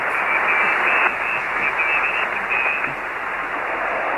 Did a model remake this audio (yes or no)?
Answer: no